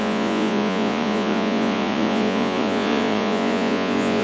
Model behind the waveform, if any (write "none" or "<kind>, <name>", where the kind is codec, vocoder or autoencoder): vocoder, Vocos